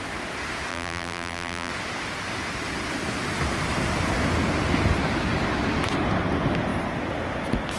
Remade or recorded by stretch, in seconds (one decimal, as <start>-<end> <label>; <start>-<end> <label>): 0.0-0.7 recorded; 0.7-1.7 remade; 1.7-7.8 recorded